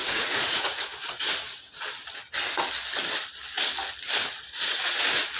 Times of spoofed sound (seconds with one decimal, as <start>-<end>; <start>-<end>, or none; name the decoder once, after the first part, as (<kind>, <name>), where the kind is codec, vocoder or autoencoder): 0.0-1.8 (vocoder, Vocos); 4.3-4.9